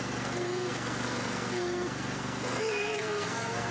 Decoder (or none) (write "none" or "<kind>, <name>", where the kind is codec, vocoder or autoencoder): codec, SNAC